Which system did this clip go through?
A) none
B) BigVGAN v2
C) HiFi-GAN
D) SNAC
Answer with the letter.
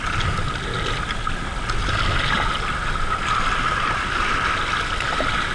A